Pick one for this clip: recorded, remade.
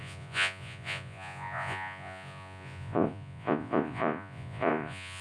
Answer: remade